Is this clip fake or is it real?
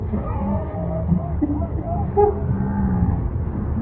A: real